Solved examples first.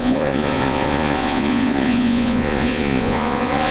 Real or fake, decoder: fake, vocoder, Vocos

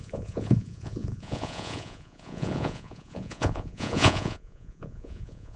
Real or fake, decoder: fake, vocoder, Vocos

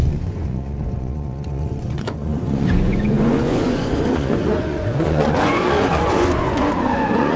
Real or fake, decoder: fake, vocoder, Vocos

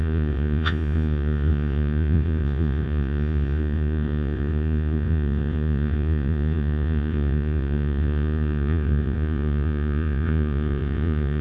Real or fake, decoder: fake, vocoder, Vocos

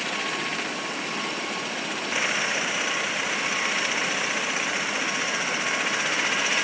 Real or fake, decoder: real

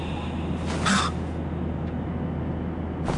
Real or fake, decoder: real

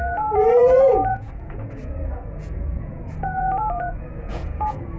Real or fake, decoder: fake, vocoder, Vocos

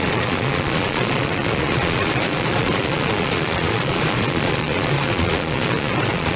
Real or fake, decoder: fake, vocoder, Vocos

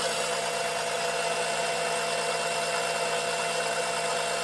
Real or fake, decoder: real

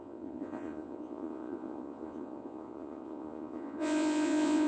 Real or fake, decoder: fake, vocoder, Vocos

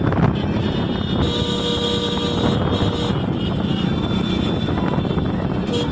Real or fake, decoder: real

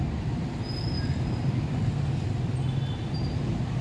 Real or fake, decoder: real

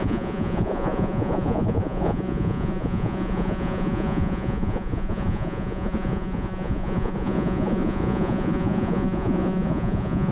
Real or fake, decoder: fake, vocoder, Vocos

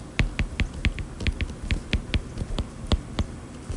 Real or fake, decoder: real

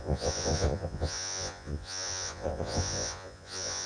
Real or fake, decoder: fake, vocoder, Vocos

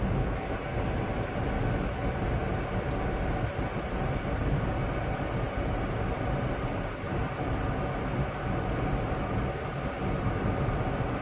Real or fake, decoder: real